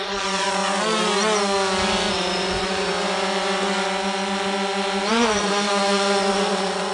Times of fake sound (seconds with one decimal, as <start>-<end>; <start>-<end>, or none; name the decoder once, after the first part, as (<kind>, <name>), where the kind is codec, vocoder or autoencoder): 0.0-0.6 (vocoder, Vocos); 2.1-2.9; 5.1-6.9